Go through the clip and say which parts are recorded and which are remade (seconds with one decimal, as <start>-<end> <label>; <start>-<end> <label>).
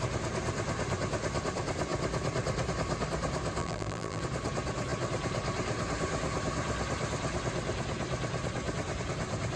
0.0-3.6 recorded; 3.6-4.2 remade; 4.2-9.6 recorded